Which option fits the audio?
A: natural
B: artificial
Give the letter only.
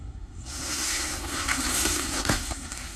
B